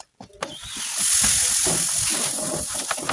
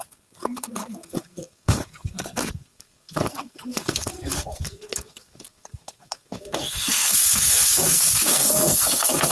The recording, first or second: first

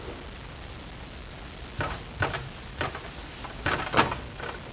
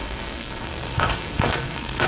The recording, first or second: first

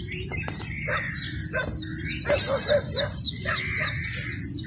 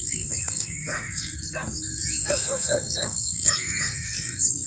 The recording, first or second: first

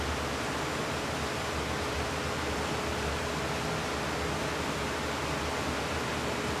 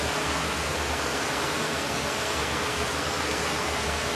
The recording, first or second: first